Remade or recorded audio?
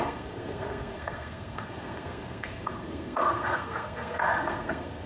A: remade